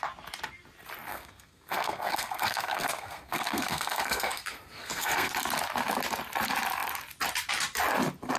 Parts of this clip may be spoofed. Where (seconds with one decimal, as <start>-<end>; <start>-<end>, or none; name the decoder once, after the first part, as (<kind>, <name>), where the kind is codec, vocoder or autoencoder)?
1.1-5.3 (codec, SNAC)